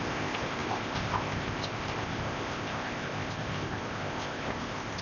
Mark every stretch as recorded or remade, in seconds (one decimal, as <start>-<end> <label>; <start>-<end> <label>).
0.0-5.0 remade